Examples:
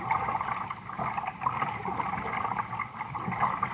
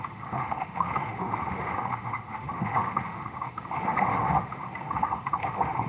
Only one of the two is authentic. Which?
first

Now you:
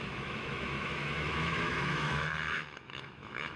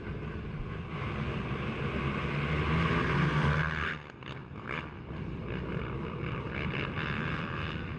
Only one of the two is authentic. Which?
second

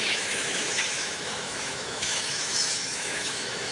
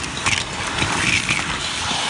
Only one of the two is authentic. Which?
second